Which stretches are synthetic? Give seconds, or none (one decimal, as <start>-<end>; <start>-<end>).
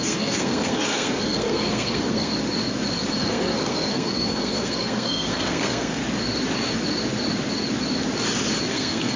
0.0-2.3; 3.1-6.0; 8.7-9.2